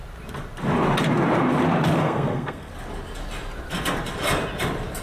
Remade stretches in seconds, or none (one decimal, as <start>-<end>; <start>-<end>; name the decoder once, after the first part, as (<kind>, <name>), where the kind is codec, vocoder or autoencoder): 2.0-2.7 (codec, SNAC)